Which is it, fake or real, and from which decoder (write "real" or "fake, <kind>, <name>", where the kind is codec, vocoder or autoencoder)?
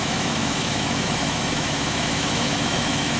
fake, autoencoder, DAC-VAE